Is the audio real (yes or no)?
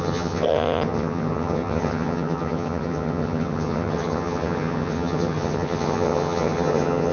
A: no